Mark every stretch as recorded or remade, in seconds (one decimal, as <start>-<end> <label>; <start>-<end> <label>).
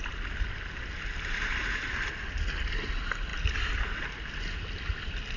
0.0-5.4 recorded